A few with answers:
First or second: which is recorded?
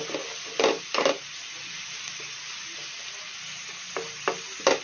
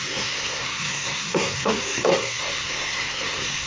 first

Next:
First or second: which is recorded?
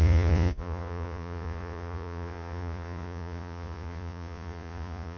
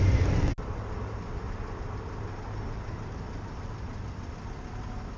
second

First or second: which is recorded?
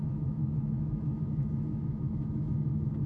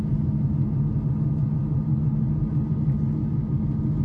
second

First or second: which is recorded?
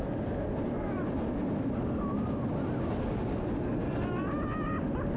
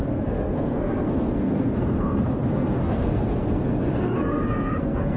first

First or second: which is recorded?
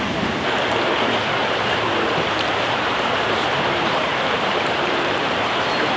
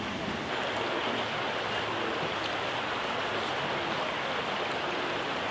second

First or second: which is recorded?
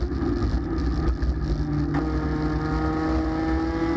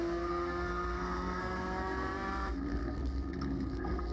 first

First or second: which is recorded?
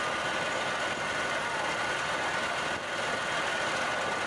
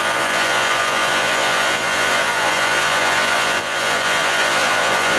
first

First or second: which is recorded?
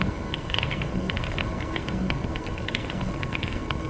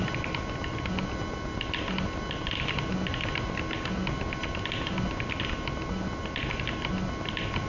second